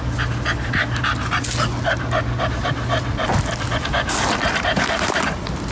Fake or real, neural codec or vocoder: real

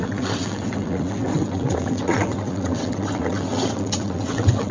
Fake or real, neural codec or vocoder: fake, vocoder, WaveNeXt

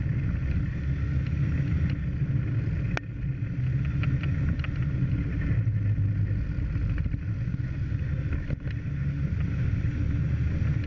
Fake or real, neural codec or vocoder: real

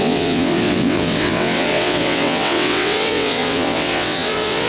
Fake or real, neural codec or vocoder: fake, vocoder, WaveNeXt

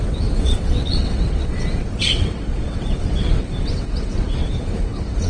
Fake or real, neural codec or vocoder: fake, vocoder, WaveNeXt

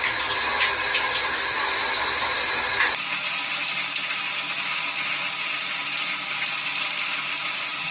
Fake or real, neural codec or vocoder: real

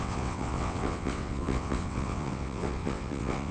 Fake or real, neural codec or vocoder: fake, vocoder, WaveNeXt